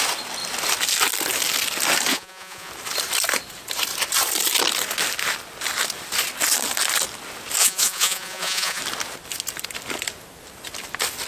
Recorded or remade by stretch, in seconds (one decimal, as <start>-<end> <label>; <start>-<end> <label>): 0.0-2.1 recorded; 2.1-2.7 remade; 2.7-7.6 recorded; 7.6-8.8 remade; 8.8-11.3 recorded